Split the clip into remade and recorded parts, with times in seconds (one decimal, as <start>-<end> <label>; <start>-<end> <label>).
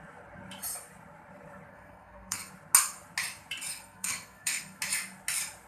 0.0-1.7 recorded; 1.7-2.5 remade; 2.5-3.7 recorded; 3.7-4.8 remade; 4.8-5.7 recorded